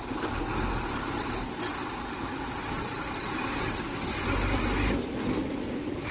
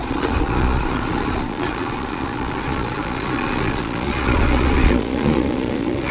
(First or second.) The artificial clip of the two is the second